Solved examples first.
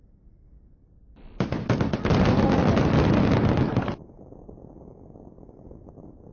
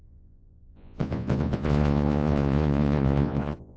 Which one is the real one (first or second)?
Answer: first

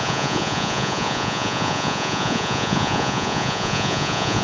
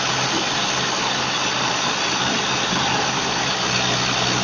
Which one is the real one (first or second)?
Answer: second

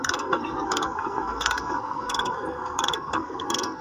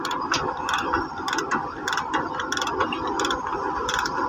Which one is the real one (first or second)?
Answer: second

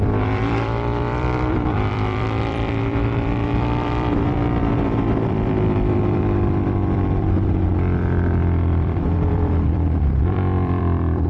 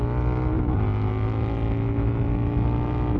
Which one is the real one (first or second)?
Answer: second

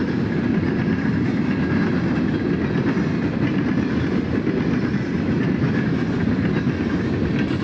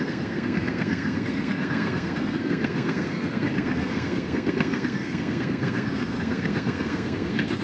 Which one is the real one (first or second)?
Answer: first